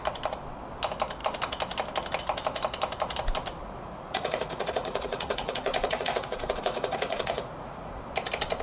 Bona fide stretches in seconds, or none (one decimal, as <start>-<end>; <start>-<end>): 0.0-3.6; 8.1-8.6